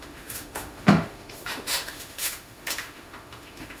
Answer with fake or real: fake